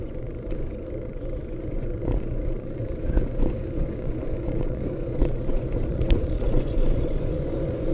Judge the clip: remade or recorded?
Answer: remade